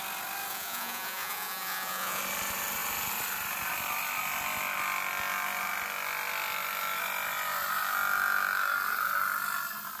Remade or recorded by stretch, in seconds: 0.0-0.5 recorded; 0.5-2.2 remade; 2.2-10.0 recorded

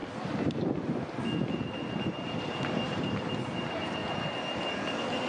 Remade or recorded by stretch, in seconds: 0.0-1.7 recorded; 1.7-4.0 remade; 4.0-5.3 recorded

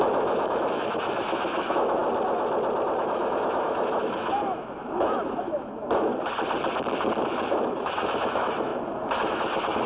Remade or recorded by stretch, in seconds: 0.0-2.0 remade; 2.0-3.0 recorded; 3.0-6.1 remade; 6.1-7.2 recorded; 7.2-9.9 remade

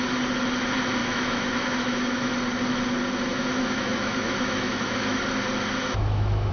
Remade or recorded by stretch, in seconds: 0.0-1.0 recorded; 1.0-2.3 remade; 2.3-3.3 recorded; 3.3-5.2 remade; 5.2-5.8 recorded; 5.8-6.5 remade

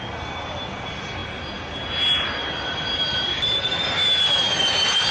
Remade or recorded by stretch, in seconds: 0.0-2.4 recorded; 2.4-5.1 remade

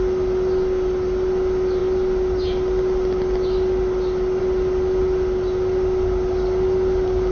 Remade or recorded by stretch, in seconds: 0.0-7.3 recorded

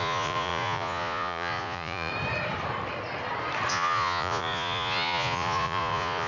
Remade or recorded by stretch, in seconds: 0.0-2.1 remade; 2.1-3.7 recorded; 3.7-6.3 remade

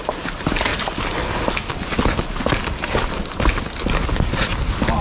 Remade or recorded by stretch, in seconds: 0.0-5.0 recorded